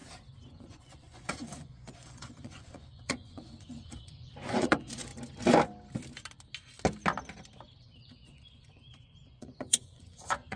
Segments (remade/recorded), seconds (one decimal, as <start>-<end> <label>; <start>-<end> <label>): 0.0-0.5 recorded; 0.5-5.1 remade; 5.1-7.8 recorded; 7.8-10.6 remade